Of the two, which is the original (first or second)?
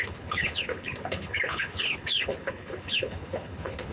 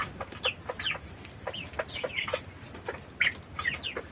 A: second